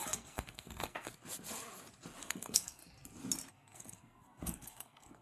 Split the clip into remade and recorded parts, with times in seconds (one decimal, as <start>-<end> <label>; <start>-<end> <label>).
0.0-1.1 remade; 1.1-2.2 recorded; 2.2-2.8 remade; 2.8-3.5 recorded; 3.5-5.2 remade